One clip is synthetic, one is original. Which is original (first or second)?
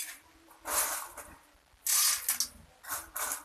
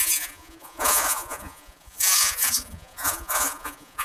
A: first